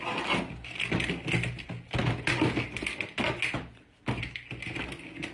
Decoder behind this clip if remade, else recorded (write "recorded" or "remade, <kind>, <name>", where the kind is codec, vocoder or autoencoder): recorded